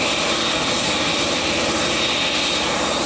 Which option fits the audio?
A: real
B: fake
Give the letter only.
A